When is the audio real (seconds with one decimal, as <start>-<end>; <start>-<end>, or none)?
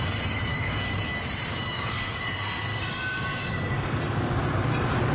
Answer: 0.0-0.5; 1.0-1.5; 2.2-2.7; 4.0-5.1